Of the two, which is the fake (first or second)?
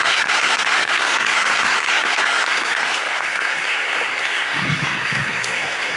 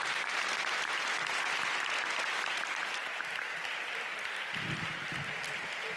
first